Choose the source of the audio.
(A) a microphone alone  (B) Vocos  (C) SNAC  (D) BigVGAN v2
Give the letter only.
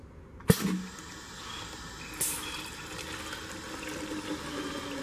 A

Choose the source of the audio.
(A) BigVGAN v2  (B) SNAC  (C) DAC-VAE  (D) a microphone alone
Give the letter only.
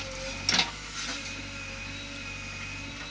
D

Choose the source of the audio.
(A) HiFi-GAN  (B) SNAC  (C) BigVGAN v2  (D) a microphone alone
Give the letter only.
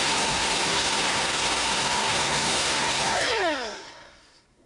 B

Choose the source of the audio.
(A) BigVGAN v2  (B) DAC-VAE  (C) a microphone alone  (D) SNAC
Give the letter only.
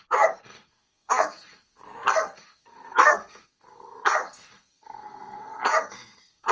D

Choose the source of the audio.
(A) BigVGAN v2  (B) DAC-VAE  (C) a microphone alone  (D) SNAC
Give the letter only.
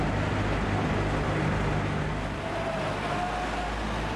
C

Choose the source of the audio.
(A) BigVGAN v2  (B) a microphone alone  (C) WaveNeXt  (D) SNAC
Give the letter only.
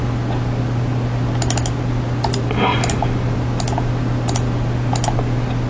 B